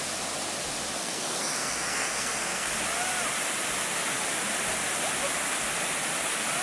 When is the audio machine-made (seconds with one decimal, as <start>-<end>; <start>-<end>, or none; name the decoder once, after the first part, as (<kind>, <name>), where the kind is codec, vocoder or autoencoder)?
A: 1.0-2.7 (codec, SNAC)